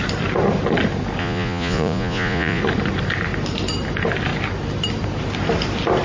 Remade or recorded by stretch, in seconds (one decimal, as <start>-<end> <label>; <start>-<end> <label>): 0.0-1.2 recorded; 1.2-2.6 remade; 2.6-6.0 recorded